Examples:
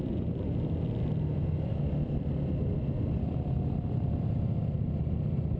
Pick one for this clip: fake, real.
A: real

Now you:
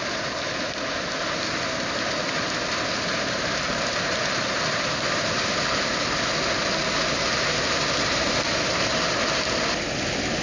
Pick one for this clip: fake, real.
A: real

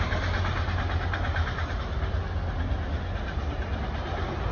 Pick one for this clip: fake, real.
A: real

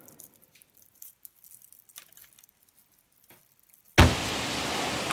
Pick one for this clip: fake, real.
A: real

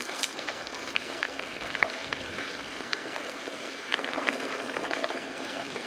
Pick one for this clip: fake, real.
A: fake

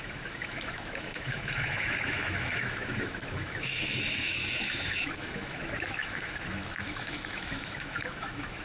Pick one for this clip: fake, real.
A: fake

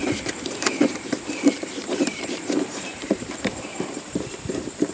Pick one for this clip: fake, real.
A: fake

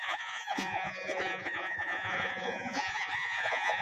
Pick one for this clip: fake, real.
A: fake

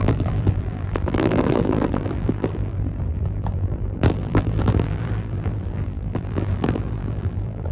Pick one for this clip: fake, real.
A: fake